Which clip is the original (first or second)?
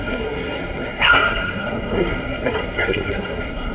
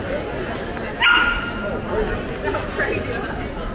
second